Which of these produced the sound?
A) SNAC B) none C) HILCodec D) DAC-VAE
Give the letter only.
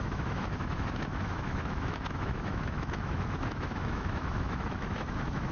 D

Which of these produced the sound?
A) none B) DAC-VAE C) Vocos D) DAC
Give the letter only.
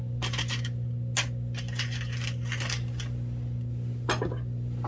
A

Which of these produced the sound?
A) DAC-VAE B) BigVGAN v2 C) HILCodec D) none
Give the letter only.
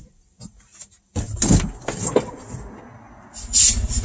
D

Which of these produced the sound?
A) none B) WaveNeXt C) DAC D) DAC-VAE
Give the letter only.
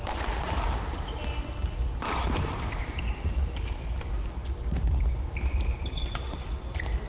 A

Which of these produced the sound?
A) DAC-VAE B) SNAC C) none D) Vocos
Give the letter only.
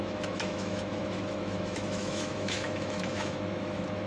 A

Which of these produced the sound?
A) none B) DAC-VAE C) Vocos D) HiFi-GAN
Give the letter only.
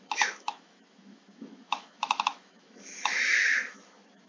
B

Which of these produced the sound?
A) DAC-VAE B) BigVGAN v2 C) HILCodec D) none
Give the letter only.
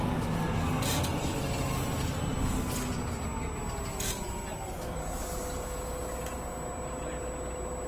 D